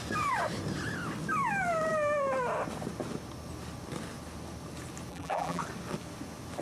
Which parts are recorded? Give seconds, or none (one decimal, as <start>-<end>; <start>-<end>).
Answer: 0.0-5.1; 5.6-6.6